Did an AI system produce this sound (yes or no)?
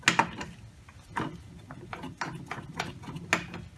no